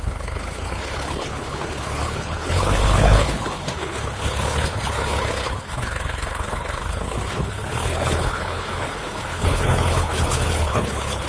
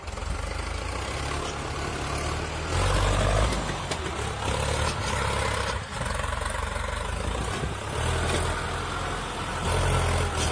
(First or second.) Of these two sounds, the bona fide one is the second